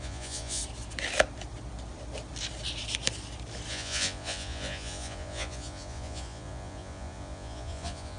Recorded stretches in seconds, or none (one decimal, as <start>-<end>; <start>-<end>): 0.6-3.7